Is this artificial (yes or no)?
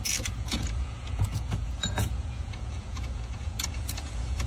yes